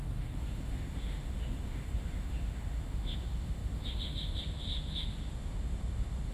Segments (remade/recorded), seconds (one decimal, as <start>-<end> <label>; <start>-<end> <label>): 0.0-6.3 remade